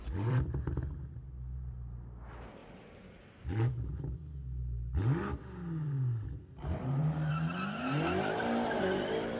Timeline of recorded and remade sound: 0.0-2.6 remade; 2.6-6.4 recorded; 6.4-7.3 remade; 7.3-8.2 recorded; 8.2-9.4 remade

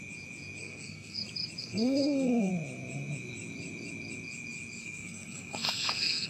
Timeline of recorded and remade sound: 0.0-0.6 recorded; 0.6-1.2 remade; 1.2-1.6 recorded; 1.6-2.5 remade; 2.5-4.8 recorded; 4.8-6.3 remade

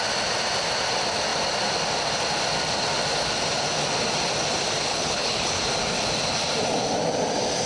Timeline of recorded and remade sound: 0.0-4.9 recorded; 4.9-5.6 remade; 5.6-7.7 recorded

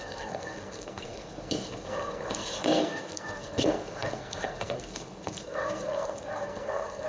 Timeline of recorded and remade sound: 0.0-7.1 remade

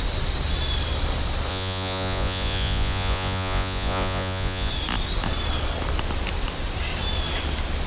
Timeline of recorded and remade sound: 0.0-1.5 recorded; 1.5-4.7 remade; 4.7-7.9 recorded